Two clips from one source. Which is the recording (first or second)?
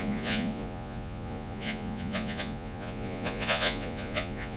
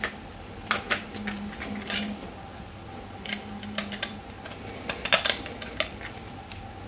second